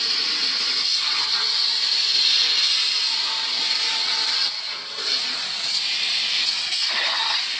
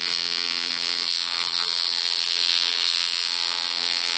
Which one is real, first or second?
first